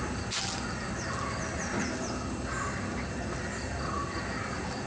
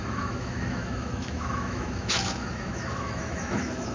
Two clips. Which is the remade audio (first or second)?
second